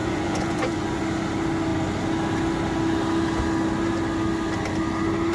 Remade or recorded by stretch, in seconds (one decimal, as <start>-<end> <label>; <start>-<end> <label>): 0.0-1.0 remade; 1.0-5.3 recorded